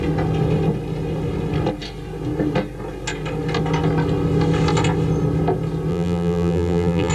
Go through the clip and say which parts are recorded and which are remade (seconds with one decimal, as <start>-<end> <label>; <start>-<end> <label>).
0.0-5.9 recorded; 5.9-7.1 remade